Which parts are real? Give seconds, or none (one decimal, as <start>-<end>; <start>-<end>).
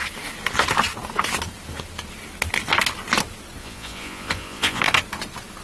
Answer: 0.0-3.6; 4.8-5.6